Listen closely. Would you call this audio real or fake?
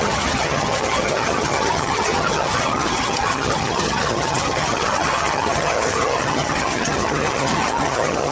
fake